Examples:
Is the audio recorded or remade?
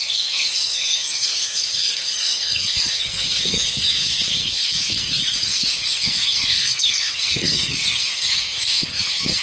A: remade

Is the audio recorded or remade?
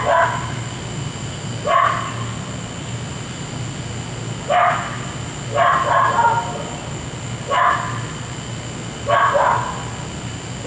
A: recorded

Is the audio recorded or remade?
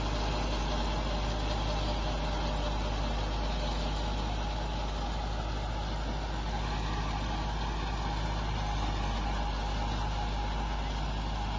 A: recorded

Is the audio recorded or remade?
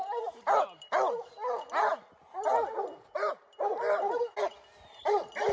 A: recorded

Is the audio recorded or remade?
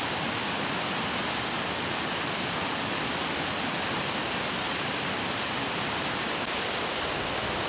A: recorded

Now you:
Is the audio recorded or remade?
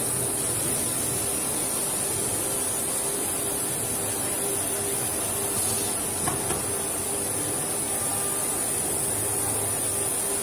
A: recorded